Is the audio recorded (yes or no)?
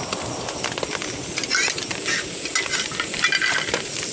yes